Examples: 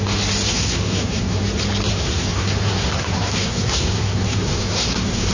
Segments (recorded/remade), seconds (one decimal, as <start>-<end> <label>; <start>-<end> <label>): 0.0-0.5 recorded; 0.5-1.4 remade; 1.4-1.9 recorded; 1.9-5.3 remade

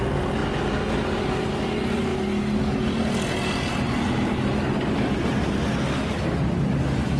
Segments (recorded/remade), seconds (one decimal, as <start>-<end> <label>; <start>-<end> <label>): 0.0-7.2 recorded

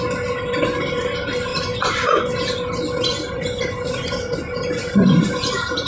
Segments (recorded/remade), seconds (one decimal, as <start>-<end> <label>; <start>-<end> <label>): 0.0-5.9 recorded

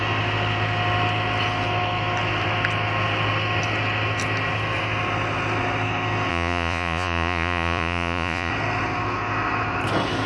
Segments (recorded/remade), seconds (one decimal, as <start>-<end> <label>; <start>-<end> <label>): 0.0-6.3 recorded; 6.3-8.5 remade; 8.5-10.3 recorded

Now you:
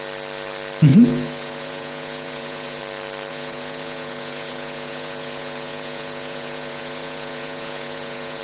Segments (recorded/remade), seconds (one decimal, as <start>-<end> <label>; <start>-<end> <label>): 0.0-0.9 recorded; 0.9-2.8 remade; 2.8-3.3 recorded; 3.3-8.4 remade

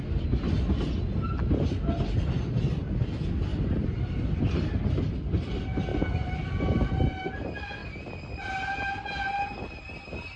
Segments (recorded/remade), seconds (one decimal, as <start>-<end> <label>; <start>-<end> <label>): 0.0-3.5 recorded; 3.5-4.4 remade; 4.4-5.9 recorded; 5.9-6.9 remade; 6.9-10.4 recorded

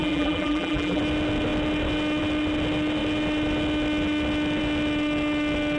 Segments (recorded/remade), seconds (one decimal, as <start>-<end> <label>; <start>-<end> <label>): 0.0-1.0 remade; 1.0-5.8 recorded